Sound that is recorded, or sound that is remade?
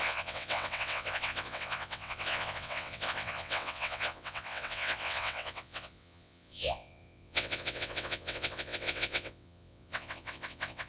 remade